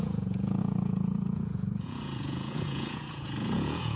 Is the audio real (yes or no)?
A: no